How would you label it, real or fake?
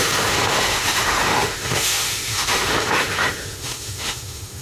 fake